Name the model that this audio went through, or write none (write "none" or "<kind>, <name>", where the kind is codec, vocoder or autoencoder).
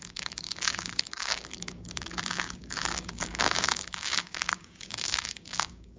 codec, DAC